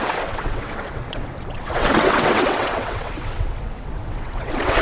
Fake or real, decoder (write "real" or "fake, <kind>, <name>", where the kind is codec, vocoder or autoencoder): fake, vocoder, WaveNeXt